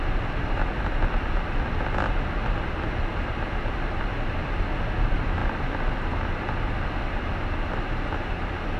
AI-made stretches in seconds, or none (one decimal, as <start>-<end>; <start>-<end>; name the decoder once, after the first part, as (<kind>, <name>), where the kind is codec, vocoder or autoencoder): none